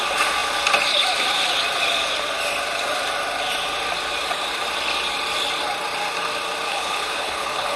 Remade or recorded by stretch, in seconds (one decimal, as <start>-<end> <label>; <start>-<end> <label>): 0.0-6.7 recorded; 6.7-7.8 remade